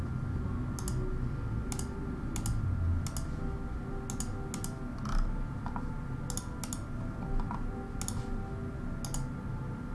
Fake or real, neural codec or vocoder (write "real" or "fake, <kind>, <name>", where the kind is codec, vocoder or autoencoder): real